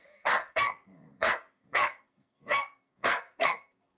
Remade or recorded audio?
remade